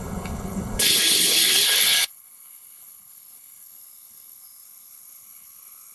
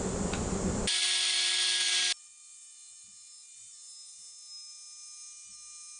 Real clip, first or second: second